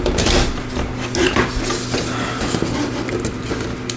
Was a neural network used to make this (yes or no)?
no